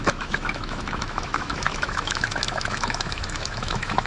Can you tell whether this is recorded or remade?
remade